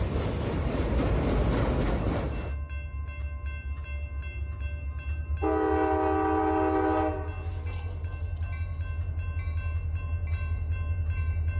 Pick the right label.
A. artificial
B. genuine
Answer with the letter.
B